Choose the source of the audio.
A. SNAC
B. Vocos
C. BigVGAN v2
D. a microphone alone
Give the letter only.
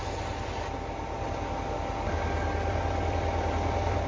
D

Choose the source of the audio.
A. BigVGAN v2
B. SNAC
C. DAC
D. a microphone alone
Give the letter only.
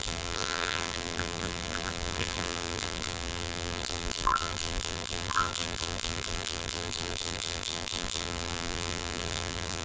A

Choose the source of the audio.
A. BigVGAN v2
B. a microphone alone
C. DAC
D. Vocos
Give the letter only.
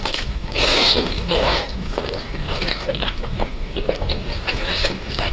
C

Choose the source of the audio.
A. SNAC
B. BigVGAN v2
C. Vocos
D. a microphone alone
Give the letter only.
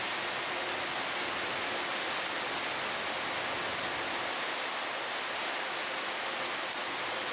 D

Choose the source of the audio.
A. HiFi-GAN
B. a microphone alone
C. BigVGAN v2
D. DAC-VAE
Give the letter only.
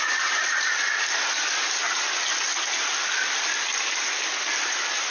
B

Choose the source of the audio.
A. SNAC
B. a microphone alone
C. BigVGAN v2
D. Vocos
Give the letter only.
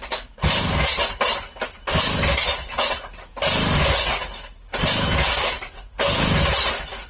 B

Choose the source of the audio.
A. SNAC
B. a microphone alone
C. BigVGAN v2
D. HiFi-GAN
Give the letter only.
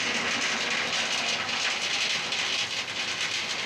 B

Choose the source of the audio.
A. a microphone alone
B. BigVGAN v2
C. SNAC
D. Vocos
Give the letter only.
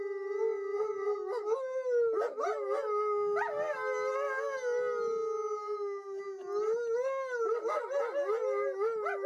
A